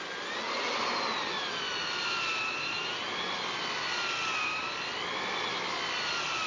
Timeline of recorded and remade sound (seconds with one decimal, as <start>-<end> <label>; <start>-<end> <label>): 0.0-6.5 recorded